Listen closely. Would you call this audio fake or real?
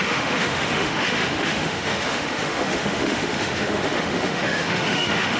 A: fake